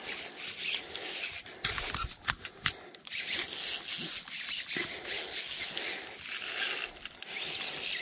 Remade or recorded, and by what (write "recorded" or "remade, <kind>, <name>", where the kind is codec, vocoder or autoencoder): recorded